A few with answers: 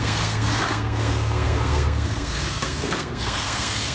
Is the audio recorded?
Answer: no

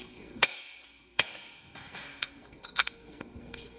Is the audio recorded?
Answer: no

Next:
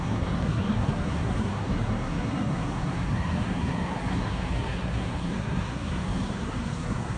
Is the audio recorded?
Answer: no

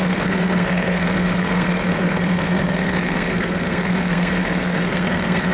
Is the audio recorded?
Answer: no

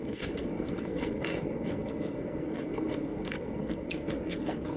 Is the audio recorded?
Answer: no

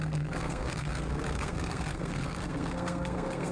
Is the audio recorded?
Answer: no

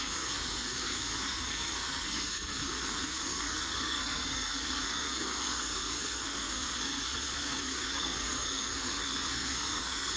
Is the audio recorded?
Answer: no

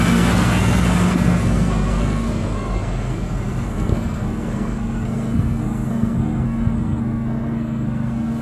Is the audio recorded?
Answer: no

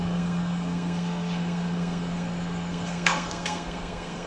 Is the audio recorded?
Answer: no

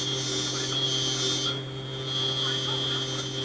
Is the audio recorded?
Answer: yes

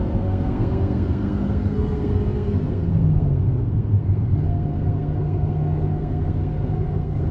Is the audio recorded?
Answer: no